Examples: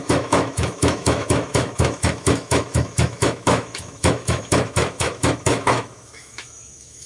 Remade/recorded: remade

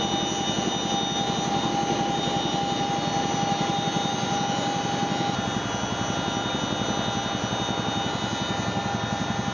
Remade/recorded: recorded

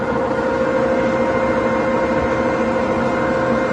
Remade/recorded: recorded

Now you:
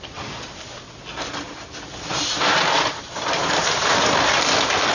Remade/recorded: recorded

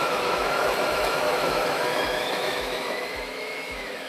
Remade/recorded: remade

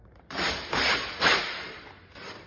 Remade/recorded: remade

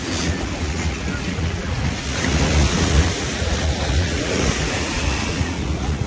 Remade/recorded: remade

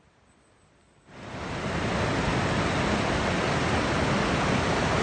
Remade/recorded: recorded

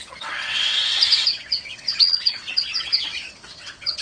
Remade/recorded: remade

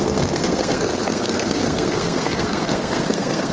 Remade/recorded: remade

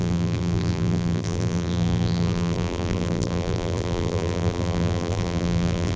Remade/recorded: remade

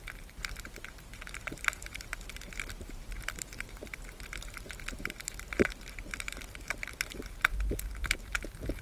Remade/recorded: remade